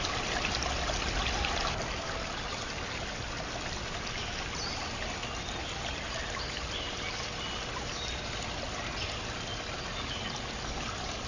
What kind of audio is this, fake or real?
real